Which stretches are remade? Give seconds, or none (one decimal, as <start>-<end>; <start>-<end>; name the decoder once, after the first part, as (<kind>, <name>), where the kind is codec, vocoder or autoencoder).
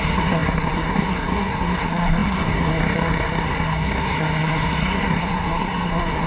0.0-6.3 (codec, SNAC)